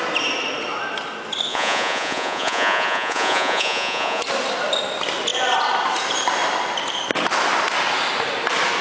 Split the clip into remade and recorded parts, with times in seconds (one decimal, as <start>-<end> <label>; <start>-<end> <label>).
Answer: 0.0-1.5 recorded; 1.5-4.2 remade; 4.2-8.8 recorded

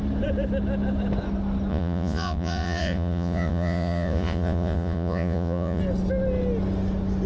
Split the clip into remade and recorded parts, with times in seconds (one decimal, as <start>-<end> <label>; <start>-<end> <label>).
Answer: 0.0-1.7 recorded; 1.7-5.8 remade; 5.8-7.3 recorded

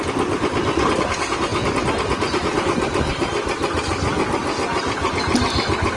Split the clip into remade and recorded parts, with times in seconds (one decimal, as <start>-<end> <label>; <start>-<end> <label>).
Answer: 0.0-6.0 recorded

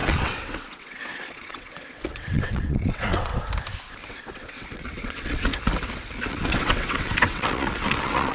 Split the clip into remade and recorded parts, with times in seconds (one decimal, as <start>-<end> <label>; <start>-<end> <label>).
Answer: 0.0-3.3 remade; 3.3-4.1 recorded; 4.1-5.5 remade; 5.5-6.3 recorded; 6.3-8.3 remade

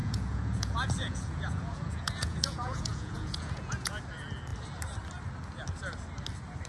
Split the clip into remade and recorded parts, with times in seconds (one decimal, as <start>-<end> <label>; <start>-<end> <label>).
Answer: 0.0-4.0 remade; 4.0-6.7 recorded

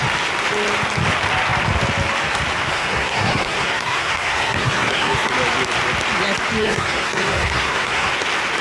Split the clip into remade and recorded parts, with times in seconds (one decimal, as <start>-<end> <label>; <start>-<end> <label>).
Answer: 0.0-2.7 recorded; 2.7-5.3 remade; 5.3-6.6 recorded; 6.6-8.1 remade; 8.1-8.6 recorded